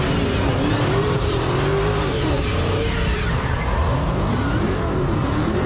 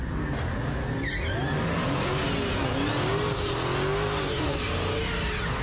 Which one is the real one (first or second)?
second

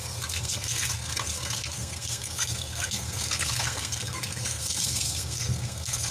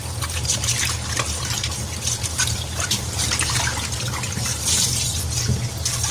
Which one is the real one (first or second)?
second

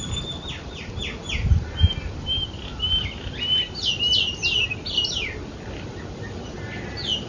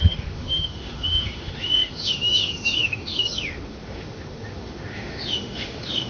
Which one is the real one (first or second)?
first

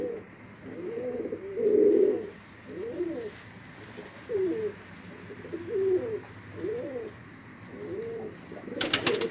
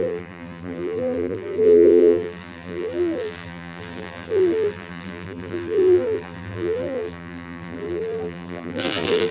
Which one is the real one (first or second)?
first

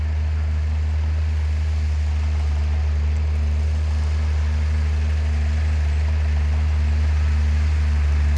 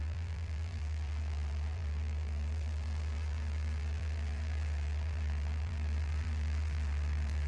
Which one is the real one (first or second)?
first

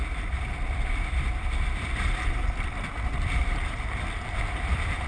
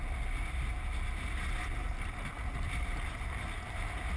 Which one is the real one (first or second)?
second